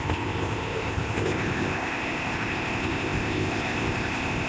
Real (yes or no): no